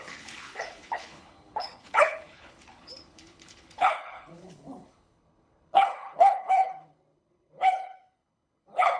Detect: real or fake fake